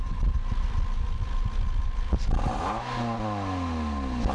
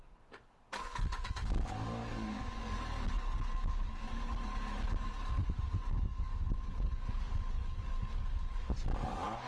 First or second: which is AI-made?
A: second